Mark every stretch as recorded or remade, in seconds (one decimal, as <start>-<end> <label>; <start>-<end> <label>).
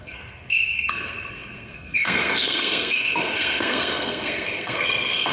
0.0-5.3 remade